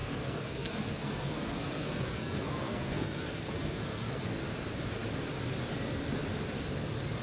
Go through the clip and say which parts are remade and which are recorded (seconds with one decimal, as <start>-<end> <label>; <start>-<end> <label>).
0.0-4.3 remade; 4.3-7.2 recorded